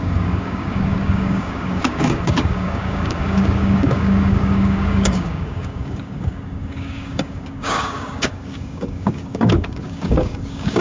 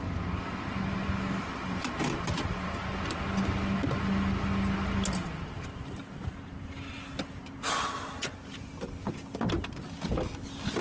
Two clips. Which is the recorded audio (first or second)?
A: second